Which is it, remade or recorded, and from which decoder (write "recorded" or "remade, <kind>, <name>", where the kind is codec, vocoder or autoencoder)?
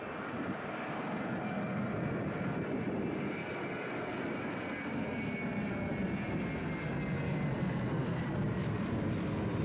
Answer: recorded